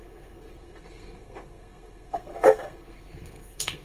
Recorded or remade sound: remade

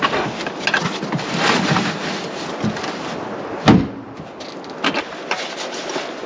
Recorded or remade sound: recorded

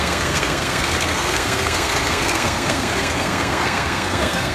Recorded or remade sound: remade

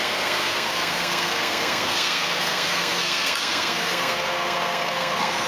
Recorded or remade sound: remade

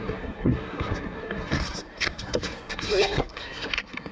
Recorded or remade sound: remade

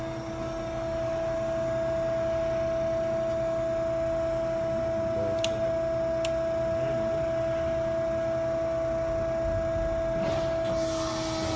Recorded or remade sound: recorded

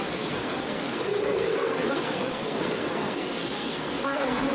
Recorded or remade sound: remade